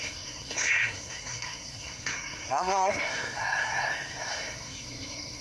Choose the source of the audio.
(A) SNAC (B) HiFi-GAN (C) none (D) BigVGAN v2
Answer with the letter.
A